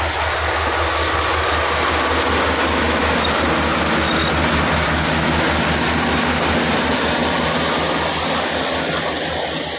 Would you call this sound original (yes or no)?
yes